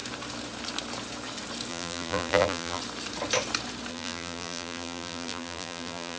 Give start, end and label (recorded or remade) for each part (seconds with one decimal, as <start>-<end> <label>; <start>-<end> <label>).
0.0-1.7 recorded; 1.7-2.8 remade; 2.8-3.9 recorded; 3.9-6.2 remade